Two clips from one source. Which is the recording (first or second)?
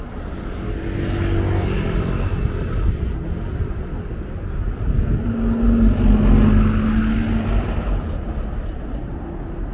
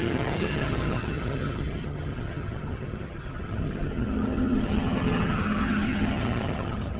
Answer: first